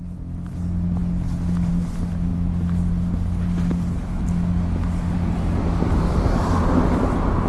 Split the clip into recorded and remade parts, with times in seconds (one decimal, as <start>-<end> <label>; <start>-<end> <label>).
0.0-7.5 recorded